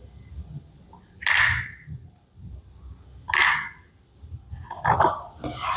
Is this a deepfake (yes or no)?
no